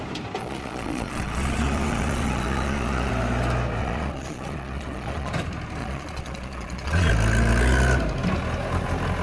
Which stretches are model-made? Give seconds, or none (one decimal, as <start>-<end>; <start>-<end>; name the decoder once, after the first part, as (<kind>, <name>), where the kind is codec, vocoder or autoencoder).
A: 0.4-3.1 (vocoder, Vocos); 3.8-5.3; 5.8-7.1